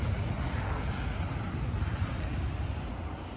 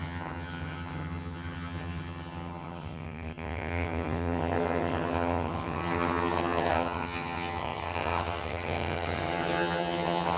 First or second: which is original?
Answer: first